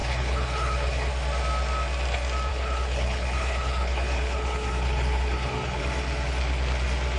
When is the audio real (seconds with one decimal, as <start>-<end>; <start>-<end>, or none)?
1.1-2.5; 5.8-7.2